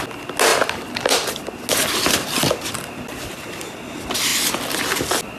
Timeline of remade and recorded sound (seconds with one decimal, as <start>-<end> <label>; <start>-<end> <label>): 0.0-0.5 recorded; 0.5-1.3 remade; 1.3-5.4 recorded